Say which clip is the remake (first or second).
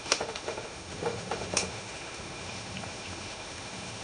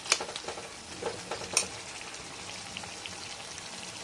first